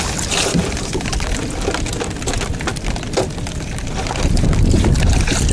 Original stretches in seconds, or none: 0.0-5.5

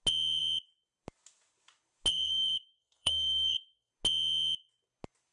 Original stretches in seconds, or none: 0.0-2.1; 3.9-5.3